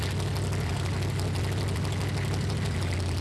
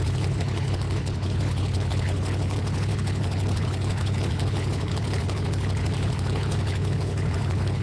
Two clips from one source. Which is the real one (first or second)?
first